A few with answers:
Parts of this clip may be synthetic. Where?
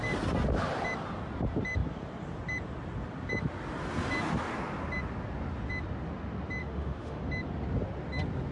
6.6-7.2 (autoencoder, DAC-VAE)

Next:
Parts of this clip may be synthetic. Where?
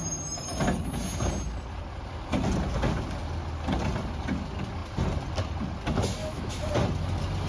6.2-6.7 (autoencoder, DAC-VAE)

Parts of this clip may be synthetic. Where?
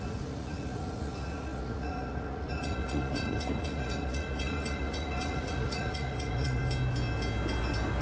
0.0-6.6 (vocoder, Vocos)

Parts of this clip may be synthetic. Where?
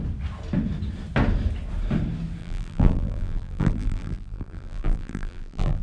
2.4-5.8 (vocoder, BigVGAN v2)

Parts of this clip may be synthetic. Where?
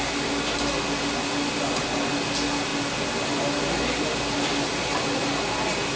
none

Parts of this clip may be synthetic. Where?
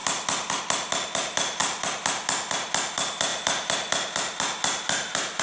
none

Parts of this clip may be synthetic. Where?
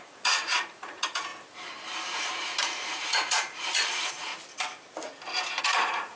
0.0-1.3 (vocoder, Vocos); 2.6-4.3; 5.6-6.2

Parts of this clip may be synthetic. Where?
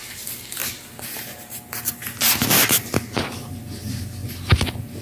none